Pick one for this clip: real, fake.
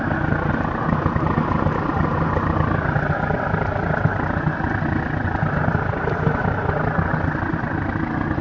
real